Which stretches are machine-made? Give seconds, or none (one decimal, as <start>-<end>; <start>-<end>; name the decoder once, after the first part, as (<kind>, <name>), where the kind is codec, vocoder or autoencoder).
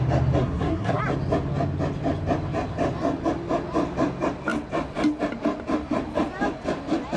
0.4-1.0 (codec, SNAC)